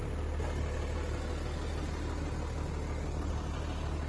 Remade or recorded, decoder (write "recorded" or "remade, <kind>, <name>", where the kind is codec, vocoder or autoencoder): recorded